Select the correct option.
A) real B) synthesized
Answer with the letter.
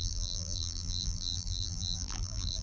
B